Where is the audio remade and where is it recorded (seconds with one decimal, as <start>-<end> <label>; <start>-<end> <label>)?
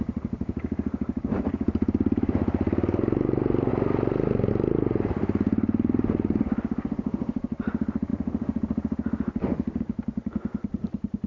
0.0-11.3 remade